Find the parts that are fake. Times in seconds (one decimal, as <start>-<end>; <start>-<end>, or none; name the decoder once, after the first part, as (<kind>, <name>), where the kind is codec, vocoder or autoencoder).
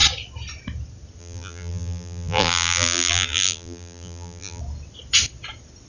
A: 1.2-4.6 (vocoder, BigVGAN v2)